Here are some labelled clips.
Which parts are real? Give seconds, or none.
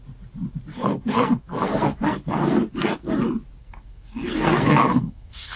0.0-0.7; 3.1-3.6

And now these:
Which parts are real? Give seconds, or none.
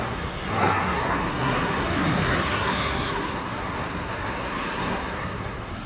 none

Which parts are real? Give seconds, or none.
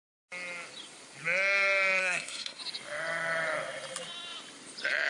0.0-2.0; 2.6-5.1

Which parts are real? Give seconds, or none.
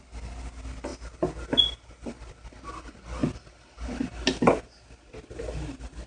0.0-6.1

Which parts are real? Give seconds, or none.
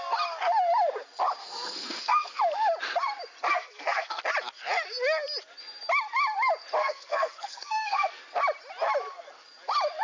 0.0-1.4; 2.4-3.5; 4.2-6.8; 8.2-10.0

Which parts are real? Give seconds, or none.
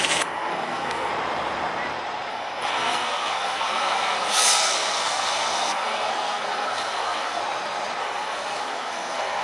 1.1-2.3; 7.4-8.0